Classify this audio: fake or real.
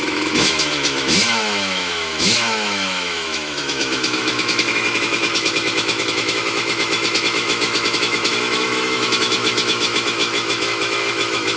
fake